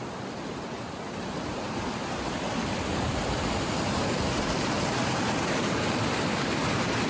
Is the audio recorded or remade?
recorded